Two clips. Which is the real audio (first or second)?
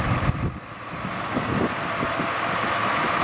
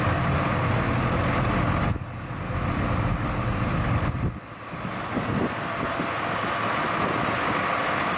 second